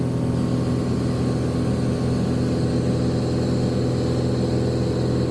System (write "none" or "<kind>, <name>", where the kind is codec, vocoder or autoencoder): none